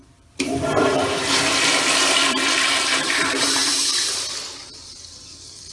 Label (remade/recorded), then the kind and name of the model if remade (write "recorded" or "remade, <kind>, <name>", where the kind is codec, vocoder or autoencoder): remade, vocoder, BigVGAN v2